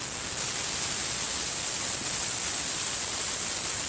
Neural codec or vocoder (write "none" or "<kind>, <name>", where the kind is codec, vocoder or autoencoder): none